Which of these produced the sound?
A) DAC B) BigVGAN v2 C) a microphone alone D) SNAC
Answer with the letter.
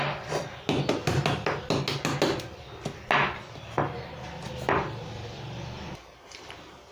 C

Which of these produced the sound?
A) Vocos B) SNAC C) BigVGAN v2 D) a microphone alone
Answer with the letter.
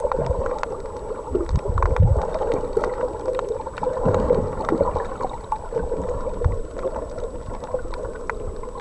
D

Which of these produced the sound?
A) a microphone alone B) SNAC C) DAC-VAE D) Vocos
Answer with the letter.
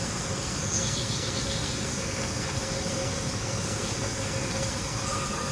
B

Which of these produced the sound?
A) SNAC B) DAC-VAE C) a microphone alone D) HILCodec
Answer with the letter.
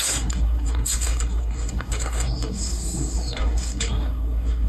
A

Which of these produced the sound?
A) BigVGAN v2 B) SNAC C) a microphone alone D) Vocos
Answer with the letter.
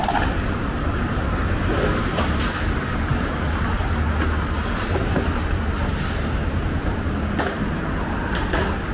C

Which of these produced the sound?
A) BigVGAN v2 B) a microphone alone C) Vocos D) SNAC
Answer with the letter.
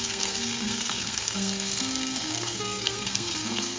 D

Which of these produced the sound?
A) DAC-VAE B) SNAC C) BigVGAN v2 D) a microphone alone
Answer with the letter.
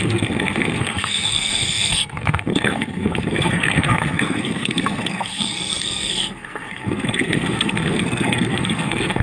B